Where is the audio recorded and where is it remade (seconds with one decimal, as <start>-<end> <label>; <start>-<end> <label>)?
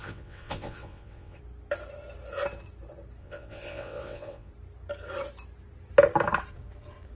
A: 0.0-1.4 remade; 1.4-3.2 recorded; 3.2-4.5 remade; 4.5-7.1 recorded